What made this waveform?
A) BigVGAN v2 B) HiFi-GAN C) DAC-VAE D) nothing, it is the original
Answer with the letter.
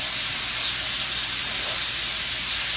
D